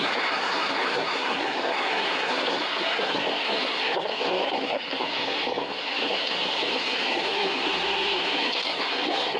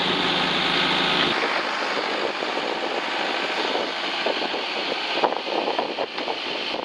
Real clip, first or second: second